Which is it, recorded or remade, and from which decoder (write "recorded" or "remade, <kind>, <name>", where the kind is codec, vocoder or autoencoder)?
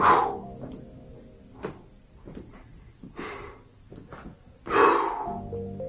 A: recorded